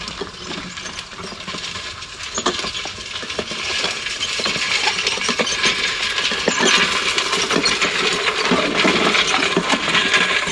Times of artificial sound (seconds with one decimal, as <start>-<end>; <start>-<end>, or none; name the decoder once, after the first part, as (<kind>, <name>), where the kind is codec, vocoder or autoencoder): none